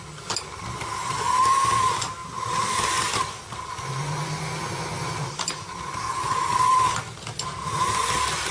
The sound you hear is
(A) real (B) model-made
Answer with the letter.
A